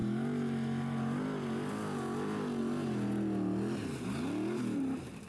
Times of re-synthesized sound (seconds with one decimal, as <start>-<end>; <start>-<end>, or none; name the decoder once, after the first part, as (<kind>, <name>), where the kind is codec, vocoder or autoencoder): none